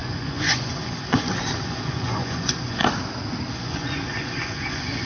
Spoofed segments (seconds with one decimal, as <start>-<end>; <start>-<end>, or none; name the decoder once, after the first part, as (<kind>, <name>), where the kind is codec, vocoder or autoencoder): 0.0-2.8 (vocoder, Vocos); 3.5-5.1